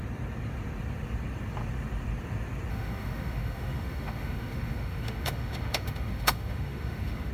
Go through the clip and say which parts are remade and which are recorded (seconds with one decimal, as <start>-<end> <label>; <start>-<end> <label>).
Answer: 0.0-2.7 recorded; 2.7-7.3 remade